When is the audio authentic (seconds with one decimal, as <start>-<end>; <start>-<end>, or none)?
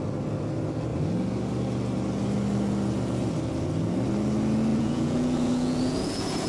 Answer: 0.0-4.7